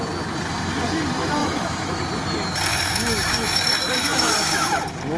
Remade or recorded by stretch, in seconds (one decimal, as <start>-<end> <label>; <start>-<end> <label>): 0.0-1.4 recorded; 1.4-2.0 remade; 2.0-2.7 recorded; 2.7-4.8 remade; 4.8-5.2 recorded